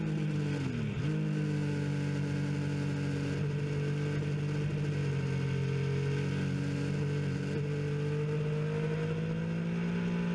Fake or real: real